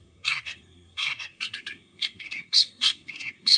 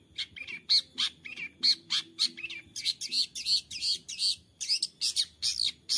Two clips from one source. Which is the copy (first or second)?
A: first